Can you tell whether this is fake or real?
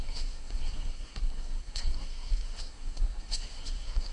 fake